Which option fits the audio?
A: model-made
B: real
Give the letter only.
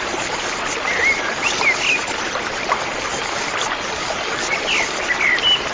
B